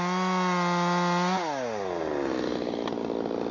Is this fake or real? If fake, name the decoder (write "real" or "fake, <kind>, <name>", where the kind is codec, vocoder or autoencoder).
real